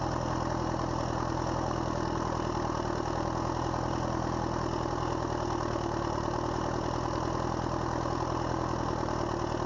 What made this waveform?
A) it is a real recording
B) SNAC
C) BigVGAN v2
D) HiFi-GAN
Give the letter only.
A